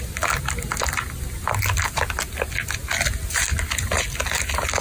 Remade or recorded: recorded